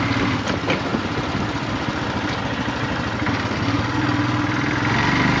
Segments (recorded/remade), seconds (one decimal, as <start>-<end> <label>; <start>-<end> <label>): 0.0-5.4 recorded

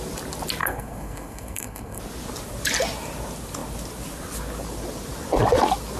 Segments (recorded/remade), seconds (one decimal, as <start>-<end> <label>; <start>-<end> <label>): 0.0-0.6 recorded; 0.6-2.0 remade; 2.0-6.0 recorded

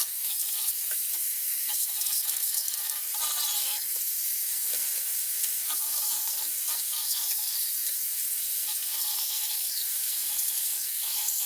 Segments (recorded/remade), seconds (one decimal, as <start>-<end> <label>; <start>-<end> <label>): 0.0-3.1 remade; 3.1-3.6 recorded; 3.6-11.5 remade

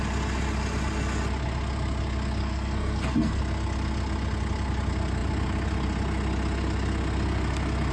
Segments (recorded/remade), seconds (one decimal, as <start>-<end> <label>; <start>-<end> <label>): 0.0-2.4 recorded; 2.4-3.4 remade; 3.4-7.9 recorded

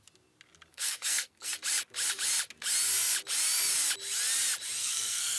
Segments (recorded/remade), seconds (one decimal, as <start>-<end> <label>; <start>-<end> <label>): 0.0-0.7 recorded; 0.7-1.5 remade; 1.5-4.8 recorded; 4.8-5.4 remade

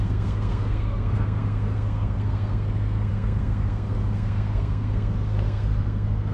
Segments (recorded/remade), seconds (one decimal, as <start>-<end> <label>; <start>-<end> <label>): 0.0-6.3 remade